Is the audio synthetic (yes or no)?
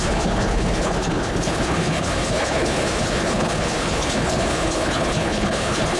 yes